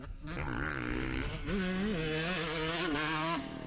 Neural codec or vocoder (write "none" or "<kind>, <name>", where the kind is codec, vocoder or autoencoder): none